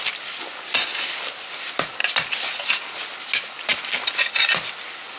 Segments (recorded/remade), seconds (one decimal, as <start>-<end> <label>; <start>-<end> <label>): 0.0-5.2 recorded